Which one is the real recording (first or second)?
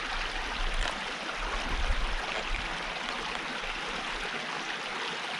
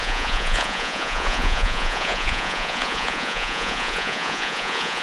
first